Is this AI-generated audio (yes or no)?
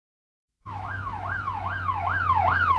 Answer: yes